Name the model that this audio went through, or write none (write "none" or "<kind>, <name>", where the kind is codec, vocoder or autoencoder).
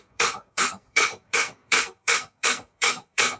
codec, SNAC